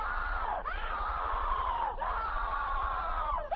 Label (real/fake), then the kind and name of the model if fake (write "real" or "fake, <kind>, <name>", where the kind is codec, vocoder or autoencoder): fake, vocoder, Vocos